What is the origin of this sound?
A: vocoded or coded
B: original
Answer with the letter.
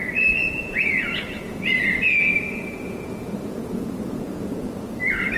A